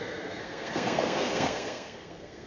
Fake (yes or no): yes